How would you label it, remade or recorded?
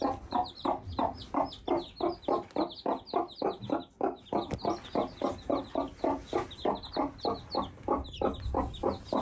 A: recorded